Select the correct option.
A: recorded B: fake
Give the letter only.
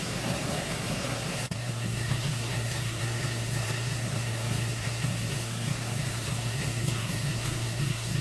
B